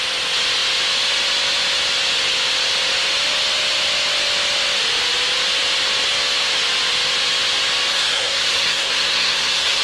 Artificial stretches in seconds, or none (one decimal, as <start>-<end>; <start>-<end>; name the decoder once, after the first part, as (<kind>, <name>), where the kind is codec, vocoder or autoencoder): 7.9-9.8 (codec, SNAC)